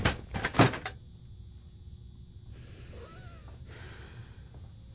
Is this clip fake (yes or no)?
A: no